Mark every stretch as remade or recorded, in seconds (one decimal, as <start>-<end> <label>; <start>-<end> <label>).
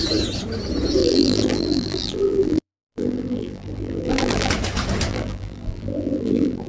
0.0-1.0 recorded; 1.0-4.5 remade; 4.5-5.1 recorded; 5.1-6.7 remade